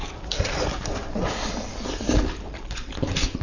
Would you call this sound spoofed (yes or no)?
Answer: no